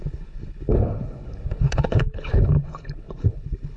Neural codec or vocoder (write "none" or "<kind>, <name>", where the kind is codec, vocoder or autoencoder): codec, HILCodec